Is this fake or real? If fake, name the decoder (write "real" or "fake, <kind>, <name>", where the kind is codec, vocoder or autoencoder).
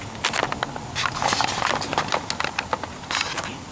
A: real